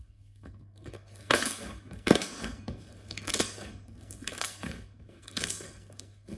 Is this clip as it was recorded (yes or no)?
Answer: no